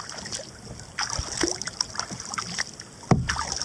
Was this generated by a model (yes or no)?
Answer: no